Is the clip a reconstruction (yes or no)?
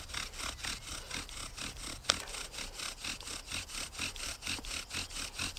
no